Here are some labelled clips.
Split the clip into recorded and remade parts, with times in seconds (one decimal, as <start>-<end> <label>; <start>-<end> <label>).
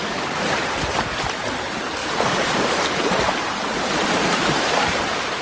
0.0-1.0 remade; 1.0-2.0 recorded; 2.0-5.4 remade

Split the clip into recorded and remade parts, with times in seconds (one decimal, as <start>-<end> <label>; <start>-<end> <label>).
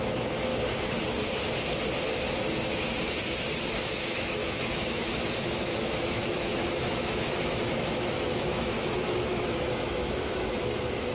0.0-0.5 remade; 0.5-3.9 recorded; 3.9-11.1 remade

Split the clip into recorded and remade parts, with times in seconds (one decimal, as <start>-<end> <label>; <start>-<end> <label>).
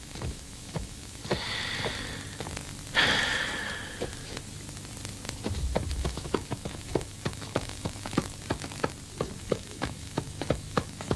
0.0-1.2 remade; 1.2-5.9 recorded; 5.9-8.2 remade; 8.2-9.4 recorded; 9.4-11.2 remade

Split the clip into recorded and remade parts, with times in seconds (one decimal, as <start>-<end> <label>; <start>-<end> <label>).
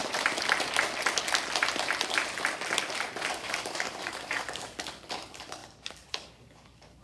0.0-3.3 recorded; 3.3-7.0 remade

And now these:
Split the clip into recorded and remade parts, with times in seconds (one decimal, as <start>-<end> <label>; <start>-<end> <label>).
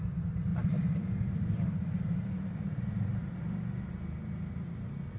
0.0-0.5 recorded; 0.5-3.4 remade; 3.4-5.2 recorded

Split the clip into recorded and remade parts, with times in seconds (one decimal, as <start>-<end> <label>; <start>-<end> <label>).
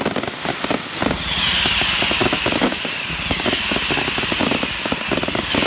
0.0-2.2 recorded; 2.2-2.8 remade; 2.8-5.7 recorded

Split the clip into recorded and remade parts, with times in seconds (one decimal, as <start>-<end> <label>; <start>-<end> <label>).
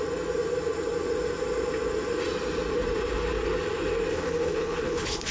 0.0-4.1 recorded; 4.1-5.3 remade